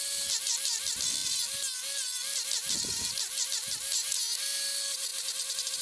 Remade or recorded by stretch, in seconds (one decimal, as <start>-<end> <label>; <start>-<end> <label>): 0.0-5.8 recorded